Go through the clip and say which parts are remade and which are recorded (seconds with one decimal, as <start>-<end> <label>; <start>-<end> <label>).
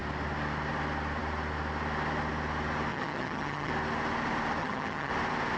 0.0-2.9 recorded; 2.9-3.7 remade; 3.7-4.6 recorded; 4.6-5.1 remade; 5.1-5.6 recorded